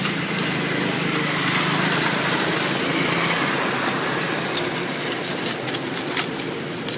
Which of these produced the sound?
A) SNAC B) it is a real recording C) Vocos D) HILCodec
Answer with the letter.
B